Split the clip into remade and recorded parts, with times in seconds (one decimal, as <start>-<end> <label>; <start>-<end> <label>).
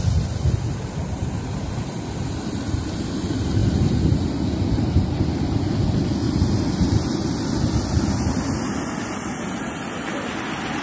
0.0-10.8 recorded